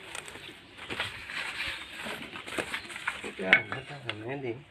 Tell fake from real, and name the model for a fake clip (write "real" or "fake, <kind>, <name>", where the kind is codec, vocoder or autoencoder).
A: real